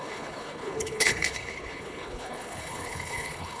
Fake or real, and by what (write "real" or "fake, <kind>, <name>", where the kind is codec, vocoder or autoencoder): fake, codec, HILCodec